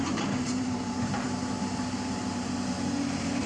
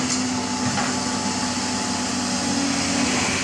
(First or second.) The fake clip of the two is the first